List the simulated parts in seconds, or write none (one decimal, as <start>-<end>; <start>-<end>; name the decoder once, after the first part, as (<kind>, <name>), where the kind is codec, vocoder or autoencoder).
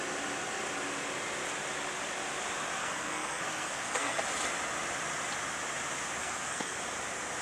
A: 2.8-4.2 (codec, SNAC); 6.2-6.8